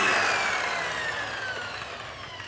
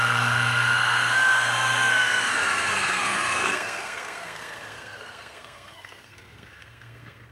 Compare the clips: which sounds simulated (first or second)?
second